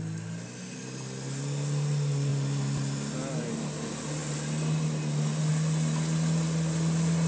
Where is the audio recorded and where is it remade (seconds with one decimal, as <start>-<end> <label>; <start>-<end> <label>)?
0.0-7.3 recorded